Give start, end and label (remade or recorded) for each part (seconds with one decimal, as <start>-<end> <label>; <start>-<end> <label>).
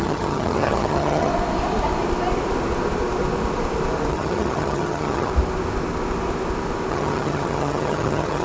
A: 0.0-1.3 remade; 1.3-4.1 recorded; 4.1-5.3 remade; 5.3-6.9 recorded; 6.9-8.4 remade